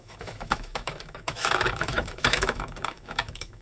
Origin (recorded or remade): remade